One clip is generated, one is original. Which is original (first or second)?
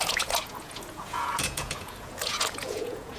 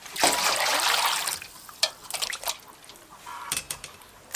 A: second